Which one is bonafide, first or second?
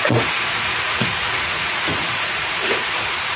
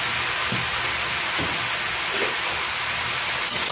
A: second